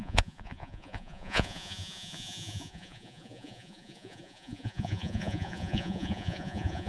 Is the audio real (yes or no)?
no